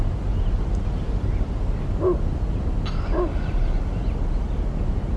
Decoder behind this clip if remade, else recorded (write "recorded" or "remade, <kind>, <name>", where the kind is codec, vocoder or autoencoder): recorded